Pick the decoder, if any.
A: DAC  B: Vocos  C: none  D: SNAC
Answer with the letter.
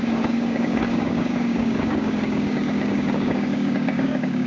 A